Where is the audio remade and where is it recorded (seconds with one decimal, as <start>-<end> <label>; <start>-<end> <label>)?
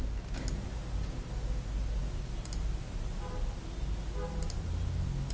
0.0-5.3 recorded